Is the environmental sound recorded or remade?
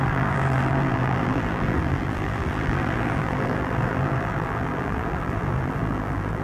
remade